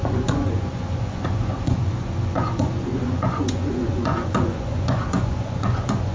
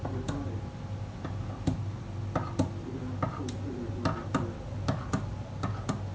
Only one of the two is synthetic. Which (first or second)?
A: first